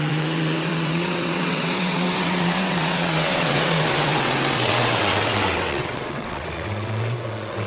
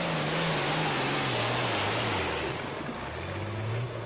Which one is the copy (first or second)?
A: first